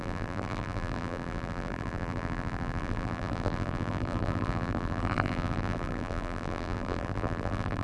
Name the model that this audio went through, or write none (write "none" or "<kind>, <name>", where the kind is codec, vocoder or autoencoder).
vocoder, BigVGAN v2